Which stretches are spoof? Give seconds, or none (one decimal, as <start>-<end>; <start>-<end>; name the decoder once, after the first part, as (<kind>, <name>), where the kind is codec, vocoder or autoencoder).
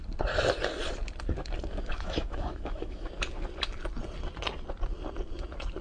1.9-3.1 (autoencoder, DAC-VAE)